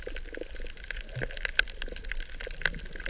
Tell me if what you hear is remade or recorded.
recorded